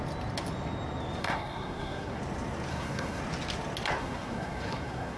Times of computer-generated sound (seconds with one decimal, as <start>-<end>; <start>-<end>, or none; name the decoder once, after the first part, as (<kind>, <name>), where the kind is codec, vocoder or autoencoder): 1.2-2.2 (codec, SNAC); 2.7-3.2; 4.0-5.2